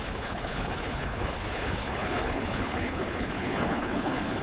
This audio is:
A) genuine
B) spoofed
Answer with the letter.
B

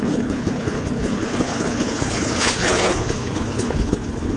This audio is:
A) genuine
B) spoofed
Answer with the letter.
B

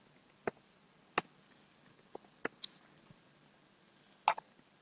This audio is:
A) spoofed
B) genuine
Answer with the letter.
B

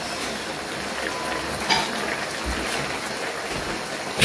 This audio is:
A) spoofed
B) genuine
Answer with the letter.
B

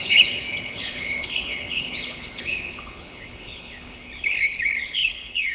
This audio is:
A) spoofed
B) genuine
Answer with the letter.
A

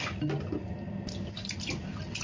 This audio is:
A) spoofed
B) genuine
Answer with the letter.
B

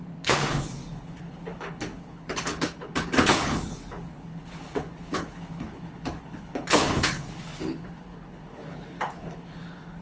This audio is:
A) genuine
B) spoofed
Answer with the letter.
B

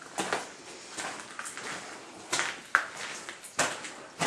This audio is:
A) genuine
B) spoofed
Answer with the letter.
A